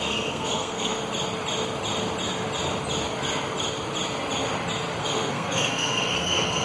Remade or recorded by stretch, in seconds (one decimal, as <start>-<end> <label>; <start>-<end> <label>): 0.0-1.0 remade; 1.0-5.0 recorded; 5.0-6.6 remade